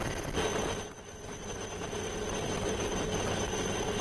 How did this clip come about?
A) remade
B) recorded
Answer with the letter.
B